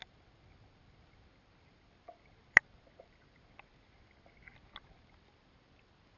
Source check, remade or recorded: recorded